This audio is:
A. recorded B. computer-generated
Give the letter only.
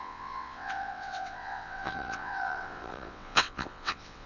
B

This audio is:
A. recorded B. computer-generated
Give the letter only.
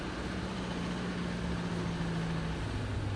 A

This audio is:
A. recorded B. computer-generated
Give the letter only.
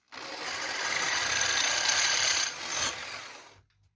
A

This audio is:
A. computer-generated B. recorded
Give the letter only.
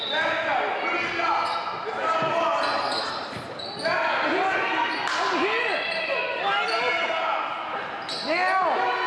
B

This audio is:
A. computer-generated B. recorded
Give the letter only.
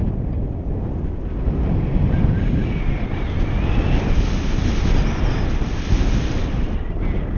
B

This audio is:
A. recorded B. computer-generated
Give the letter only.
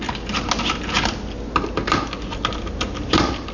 A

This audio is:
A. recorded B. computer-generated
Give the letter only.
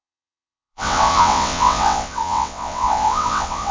B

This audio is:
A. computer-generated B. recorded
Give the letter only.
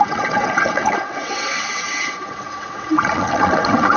A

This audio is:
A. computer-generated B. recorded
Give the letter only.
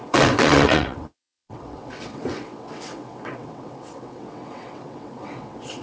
A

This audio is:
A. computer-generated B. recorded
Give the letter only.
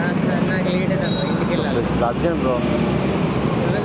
B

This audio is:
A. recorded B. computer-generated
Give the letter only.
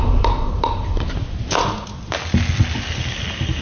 A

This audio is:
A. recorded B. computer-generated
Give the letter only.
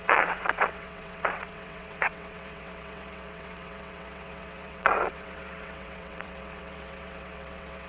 B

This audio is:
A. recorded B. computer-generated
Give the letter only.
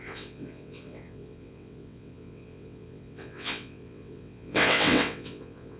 B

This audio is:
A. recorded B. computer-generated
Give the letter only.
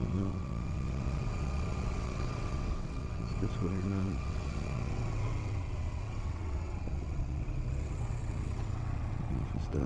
B